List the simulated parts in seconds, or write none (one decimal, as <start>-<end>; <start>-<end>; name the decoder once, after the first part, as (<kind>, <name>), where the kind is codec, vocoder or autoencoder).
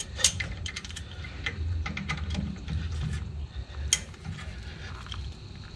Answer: 0.0-3.3 (vocoder, BigVGAN v2)